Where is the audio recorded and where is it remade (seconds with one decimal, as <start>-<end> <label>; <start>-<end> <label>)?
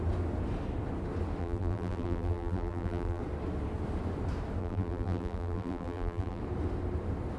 0.0-1.4 recorded; 1.4-3.2 remade; 3.2-4.6 recorded; 4.6-6.4 remade; 6.4-7.4 recorded